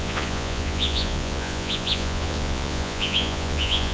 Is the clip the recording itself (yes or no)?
no